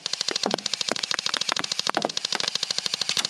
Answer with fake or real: fake